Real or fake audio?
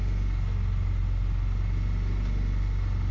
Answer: real